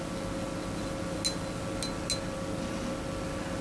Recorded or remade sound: recorded